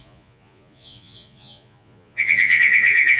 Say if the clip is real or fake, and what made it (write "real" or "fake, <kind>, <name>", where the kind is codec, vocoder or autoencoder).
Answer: fake, vocoder, Vocos